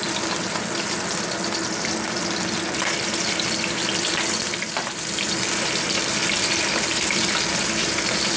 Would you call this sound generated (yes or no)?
yes